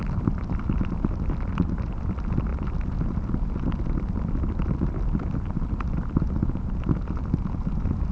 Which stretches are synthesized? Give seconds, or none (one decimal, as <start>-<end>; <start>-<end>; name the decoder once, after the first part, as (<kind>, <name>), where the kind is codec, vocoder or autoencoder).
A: none